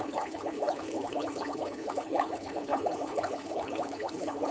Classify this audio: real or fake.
fake